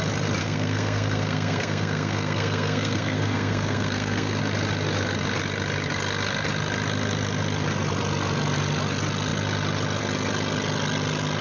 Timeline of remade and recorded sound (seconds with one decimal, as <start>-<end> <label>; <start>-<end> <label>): 0.0-0.4 recorded; 0.4-4.4 remade; 4.4-11.4 recorded